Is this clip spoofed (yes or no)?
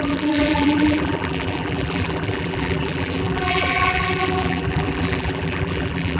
yes